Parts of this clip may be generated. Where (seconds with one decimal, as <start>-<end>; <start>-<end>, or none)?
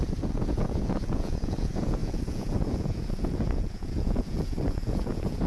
0.0-5.5